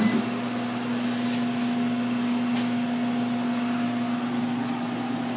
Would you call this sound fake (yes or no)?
no